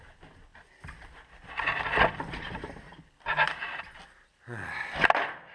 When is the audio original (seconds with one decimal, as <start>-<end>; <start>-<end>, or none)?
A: 0.0-5.5

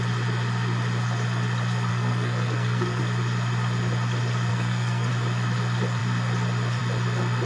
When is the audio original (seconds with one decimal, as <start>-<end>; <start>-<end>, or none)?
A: 0.0-1.9; 3.0-4.5; 5.1-7.5

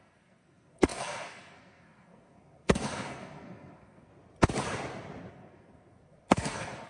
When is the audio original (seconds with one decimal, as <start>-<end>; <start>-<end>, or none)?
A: 4.1-5.3

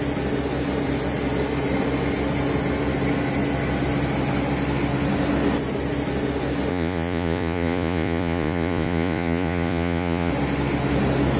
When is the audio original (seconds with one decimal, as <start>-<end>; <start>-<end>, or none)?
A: 0.0-6.7; 10.3-11.4

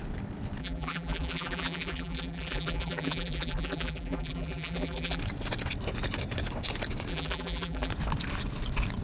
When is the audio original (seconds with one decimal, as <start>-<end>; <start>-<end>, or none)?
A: 0.0-0.6; 5.2-7.1; 7.9-9.0

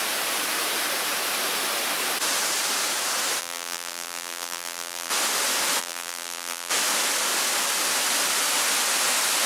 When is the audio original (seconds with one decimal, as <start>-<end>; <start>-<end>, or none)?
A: 0.0-3.4; 5.1-5.8; 6.7-9.5

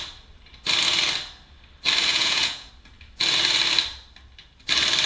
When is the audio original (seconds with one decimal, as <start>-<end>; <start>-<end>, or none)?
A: 0.0-2.1; 2.7-5.1

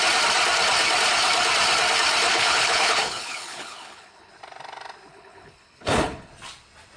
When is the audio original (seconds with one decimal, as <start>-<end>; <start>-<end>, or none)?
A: 0.0-2.3; 4.3-5.1; 6.3-7.0